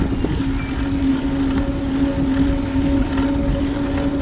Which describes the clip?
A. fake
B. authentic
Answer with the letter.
B